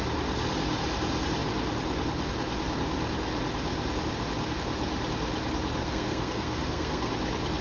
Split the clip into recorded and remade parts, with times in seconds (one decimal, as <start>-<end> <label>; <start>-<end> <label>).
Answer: 0.0-5.8 recorded; 5.8-7.1 remade; 7.1-7.6 recorded